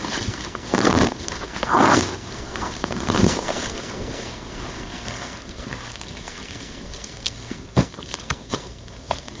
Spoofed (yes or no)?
yes